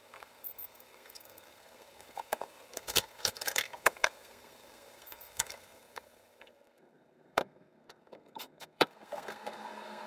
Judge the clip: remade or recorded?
remade